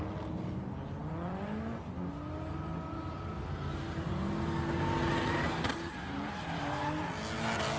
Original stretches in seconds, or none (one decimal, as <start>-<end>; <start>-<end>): 0.0-7.8